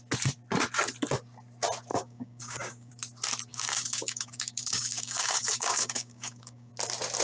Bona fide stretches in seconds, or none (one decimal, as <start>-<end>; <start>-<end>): 0.0-1.9; 2.9-3.5; 6.7-7.2